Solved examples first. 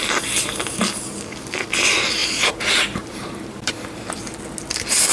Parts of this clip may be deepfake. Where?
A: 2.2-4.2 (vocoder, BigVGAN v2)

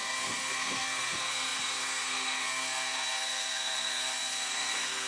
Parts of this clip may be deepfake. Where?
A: 0.0-5.1 (codec, SNAC)